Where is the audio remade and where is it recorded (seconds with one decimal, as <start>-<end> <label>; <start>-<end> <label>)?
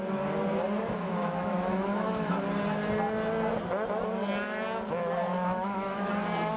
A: 0.0-0.8 recorded; 0.8-2.3 remade; 2.3-5.3 recorded; 5.3-6.1 remade; 6.1-6.6 recorded